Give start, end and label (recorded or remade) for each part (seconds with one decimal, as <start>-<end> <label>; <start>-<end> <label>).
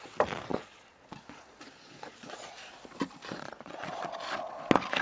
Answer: 0.0-0.5 recorded; 0.5-2.7 remade; 2.7-3.3 recorded; 3.3-4.1 remade; 4.1-5.0 recorded